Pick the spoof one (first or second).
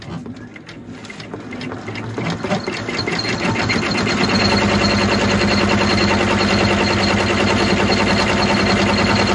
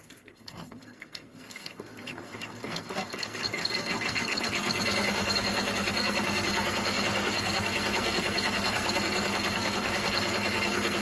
second